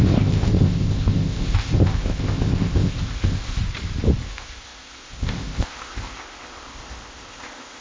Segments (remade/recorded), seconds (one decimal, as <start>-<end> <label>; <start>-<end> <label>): 0.0-3.6 remade; 3.6-4.2 recorded; 4.2-7.8 remade